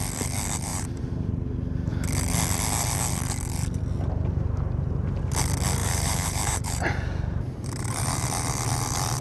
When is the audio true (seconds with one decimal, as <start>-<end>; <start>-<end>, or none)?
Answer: 0.0-0.7; 1.3-5.8; 8.0-9.2